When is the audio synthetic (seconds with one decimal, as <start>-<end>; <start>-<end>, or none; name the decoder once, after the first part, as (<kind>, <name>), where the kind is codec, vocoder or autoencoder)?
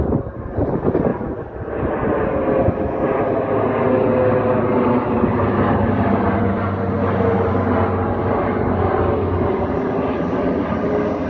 none